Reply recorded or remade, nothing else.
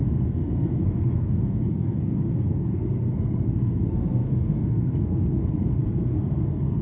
remade